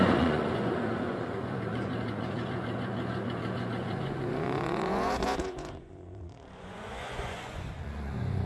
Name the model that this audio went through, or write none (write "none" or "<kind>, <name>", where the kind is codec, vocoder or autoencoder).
vocoder, Vocos